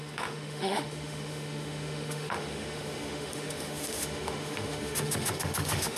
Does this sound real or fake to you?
fake